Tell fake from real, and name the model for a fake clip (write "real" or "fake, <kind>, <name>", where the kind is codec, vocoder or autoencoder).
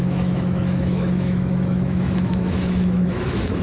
fake, autoencoder, DAC-VAE